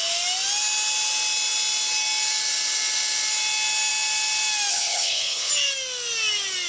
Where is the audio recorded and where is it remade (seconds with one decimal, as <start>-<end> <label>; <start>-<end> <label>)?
0.0-4.7 recorded; 4.7-5.5 remade; 5.5-6.7 recorded